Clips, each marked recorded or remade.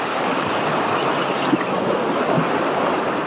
recorded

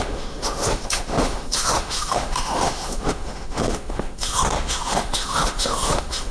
remade